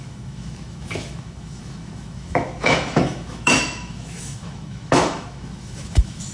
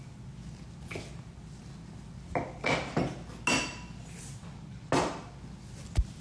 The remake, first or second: first